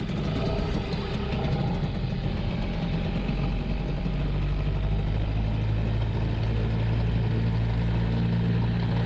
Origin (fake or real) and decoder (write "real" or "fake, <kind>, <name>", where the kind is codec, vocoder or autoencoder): real